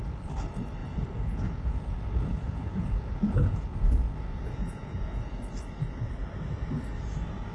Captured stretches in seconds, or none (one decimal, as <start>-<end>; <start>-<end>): 0.0-0.8; 5.3-7.5